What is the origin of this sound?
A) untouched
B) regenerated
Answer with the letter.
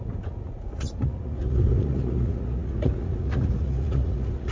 B